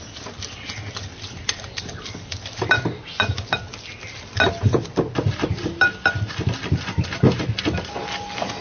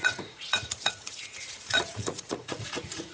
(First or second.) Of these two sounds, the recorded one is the first